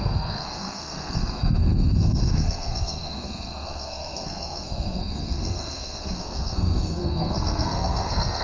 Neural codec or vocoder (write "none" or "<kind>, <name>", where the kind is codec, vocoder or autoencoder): codec, SNAC